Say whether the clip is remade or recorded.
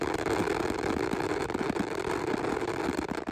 recorded